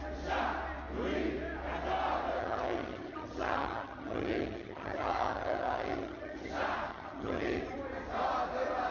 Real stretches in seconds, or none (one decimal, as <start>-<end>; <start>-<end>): 0.0-2.4; 6.5-6.9; 7.6-8.9